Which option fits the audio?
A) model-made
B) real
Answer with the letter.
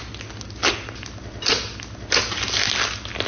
B